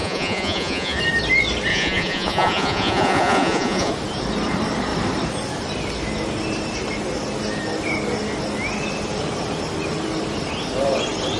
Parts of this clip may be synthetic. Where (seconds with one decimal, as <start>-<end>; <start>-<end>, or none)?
0.0-1.0; 1.7-3.9